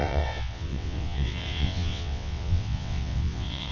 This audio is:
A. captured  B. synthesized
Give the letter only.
B